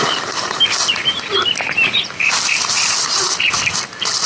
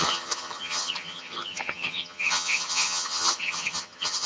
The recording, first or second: first